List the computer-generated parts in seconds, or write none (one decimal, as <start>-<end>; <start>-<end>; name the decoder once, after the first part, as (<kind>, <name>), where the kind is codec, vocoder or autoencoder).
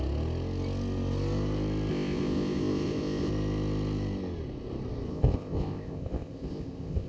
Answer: 1.9-3.3 (codec, ZipCodec); 5.1-7.1